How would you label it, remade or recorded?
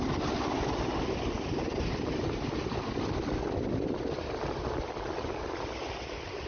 recorded